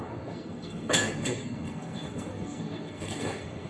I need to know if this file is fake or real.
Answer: fake